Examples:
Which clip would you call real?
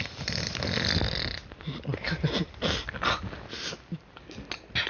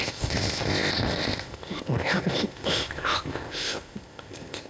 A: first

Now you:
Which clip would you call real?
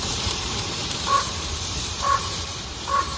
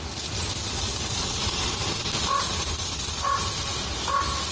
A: second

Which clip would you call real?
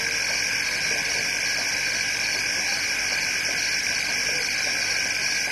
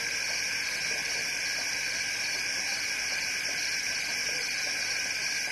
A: first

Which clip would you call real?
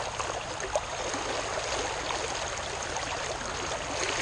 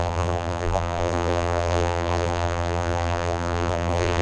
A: first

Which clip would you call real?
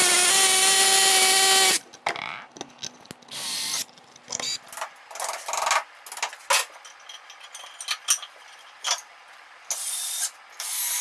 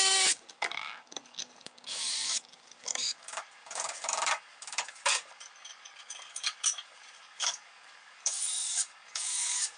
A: first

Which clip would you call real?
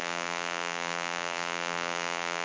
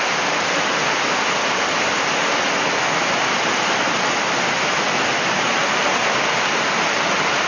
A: second